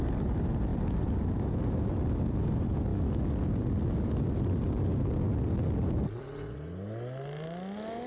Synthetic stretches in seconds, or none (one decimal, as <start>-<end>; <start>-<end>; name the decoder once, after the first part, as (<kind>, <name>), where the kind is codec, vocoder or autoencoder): none